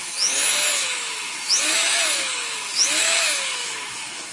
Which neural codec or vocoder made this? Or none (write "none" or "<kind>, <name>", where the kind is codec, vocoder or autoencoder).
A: autoencoder, DAC-VAE